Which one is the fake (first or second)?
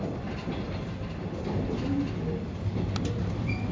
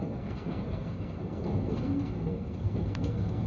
second